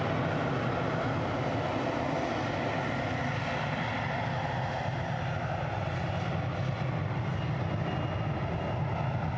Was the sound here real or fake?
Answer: real